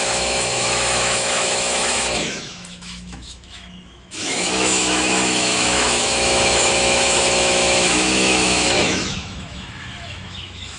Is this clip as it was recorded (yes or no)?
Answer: no